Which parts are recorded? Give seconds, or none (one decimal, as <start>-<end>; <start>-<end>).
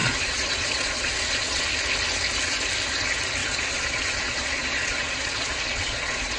1.6-3.4